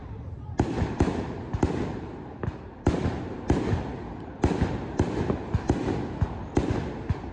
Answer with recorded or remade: recorded